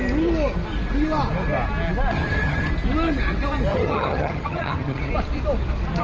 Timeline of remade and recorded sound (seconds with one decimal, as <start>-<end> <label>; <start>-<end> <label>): 0.0-2.1 recorded; 2.1-2.7 remade; 2.7-3.7 recorded; 3.7-5.1 remade; 5.1-6.0 recorded